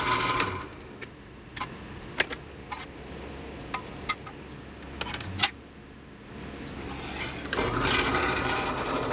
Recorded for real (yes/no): yes